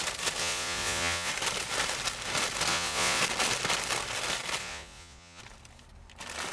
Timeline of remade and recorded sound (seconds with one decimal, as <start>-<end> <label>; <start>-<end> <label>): 0.0-0.4 recorded; 0.4-1.3 remade; 1.3-2.7 recorded; 2.7-3.2 remade; 3.2-4.6 recorded; 4.6-5.4 remade; 5.4-6.5 recorded